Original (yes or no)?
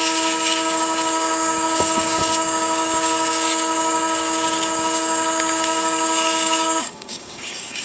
no